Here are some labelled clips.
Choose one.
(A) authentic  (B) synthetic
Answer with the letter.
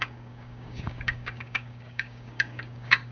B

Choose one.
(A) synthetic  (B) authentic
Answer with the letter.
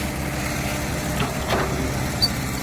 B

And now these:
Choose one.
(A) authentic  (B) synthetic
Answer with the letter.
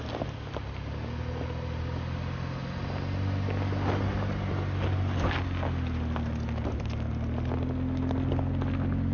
A